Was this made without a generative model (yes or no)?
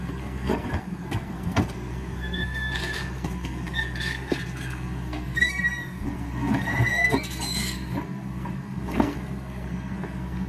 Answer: no